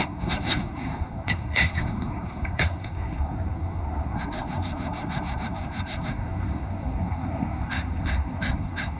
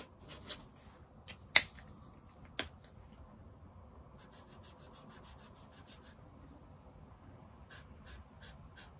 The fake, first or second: first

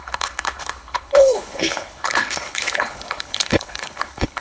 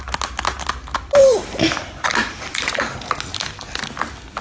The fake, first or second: first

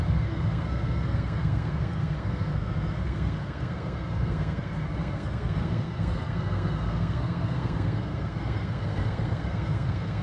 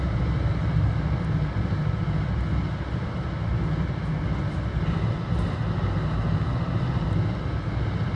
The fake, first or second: first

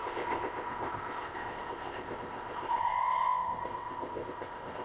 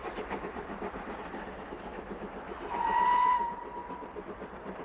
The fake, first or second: first